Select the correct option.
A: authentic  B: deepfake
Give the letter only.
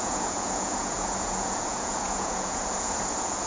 B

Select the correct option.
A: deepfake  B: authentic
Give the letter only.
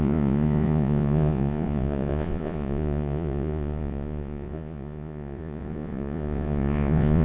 A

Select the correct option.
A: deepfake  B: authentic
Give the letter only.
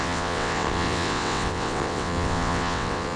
A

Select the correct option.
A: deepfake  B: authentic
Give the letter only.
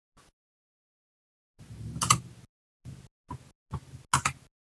B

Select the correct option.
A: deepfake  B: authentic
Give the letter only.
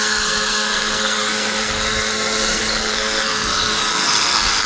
A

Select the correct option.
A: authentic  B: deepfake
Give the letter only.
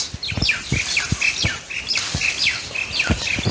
A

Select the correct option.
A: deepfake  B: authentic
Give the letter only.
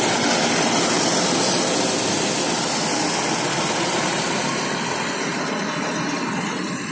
B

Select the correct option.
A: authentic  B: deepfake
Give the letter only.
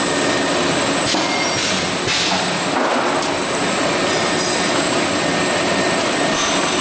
A